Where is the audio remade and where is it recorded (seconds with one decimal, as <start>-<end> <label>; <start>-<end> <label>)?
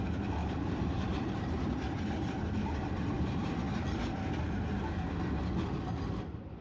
0.0-0.4 recorded; 0.4-4.4 remade; 4.4-6.6 recorded